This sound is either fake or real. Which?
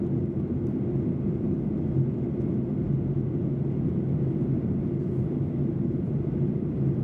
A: real